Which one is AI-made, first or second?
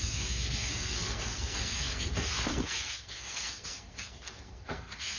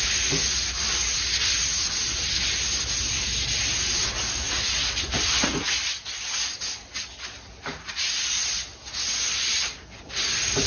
first